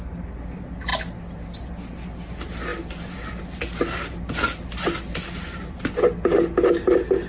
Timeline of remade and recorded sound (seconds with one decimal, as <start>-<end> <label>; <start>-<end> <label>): 0.0-7.3 recorded